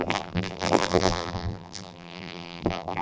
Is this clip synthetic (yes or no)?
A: yes